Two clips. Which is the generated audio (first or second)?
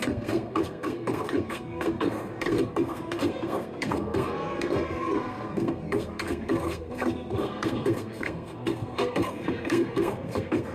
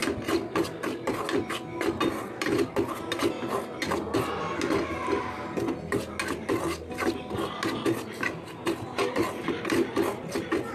first